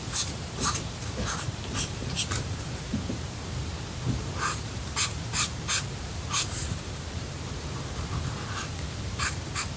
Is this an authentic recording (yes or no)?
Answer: no